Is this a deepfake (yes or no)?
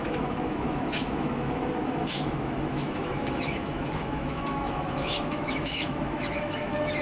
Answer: yes